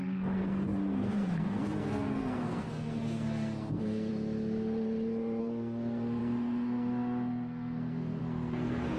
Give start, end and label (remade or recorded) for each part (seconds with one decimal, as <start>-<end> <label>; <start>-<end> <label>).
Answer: 0.0-4.1 remade; 4.1-5.4 recorded; 5.4-9.0 remade